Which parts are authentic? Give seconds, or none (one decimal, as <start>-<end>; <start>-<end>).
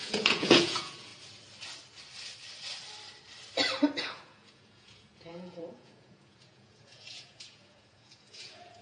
1.1-4.0